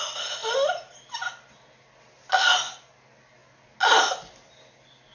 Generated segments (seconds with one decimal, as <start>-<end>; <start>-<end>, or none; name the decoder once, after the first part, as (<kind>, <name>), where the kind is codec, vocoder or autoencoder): none